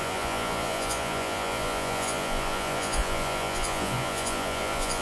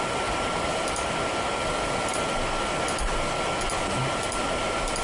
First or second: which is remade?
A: first